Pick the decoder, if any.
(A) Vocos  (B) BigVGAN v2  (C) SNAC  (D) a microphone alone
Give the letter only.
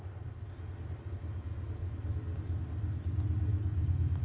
D